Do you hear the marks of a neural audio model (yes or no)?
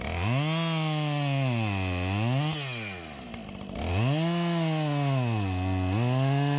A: no